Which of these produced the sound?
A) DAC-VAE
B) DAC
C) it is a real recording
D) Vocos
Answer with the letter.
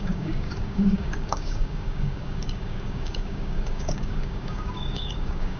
B